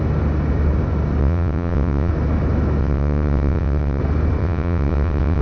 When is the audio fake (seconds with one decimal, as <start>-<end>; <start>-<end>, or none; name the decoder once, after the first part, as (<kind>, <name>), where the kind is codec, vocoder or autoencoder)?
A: 1.2-2.1 (vocoder, WaveNeXt); 2.8-4.0; 4.4-5.4